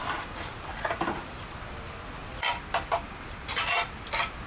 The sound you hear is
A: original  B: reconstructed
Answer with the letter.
A